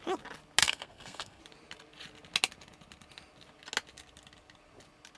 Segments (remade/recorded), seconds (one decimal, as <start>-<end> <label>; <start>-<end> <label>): 0.0-0.6 recorded; 0.6-1.4 remade; 1.4-5.2 recorded